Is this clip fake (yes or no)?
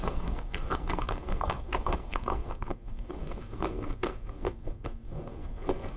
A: yes